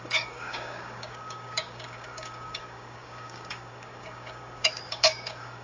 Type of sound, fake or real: fake